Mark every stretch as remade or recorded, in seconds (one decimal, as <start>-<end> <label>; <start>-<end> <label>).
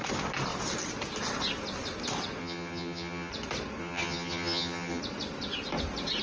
0.0-2.4 recorded; 2.4-3.3 remade; 3.3-3.8 recorded; 3.8-5.0 remade; 5.0-6.2 recorded